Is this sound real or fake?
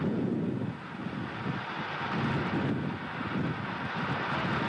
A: real